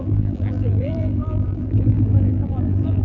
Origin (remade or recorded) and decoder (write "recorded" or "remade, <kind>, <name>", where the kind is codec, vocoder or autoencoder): remade, vocoder, BigVGAN v2